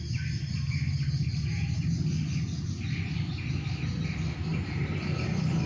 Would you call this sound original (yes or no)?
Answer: yes